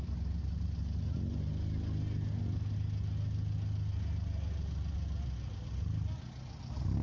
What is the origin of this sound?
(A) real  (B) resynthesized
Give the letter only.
A